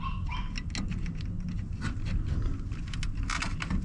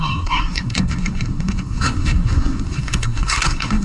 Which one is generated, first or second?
second